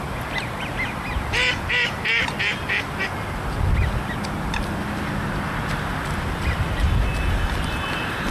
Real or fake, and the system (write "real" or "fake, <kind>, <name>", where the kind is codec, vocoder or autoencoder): real